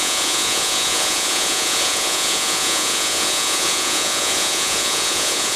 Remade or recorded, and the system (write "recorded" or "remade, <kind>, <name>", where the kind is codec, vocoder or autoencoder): remade, vocoder, Vocos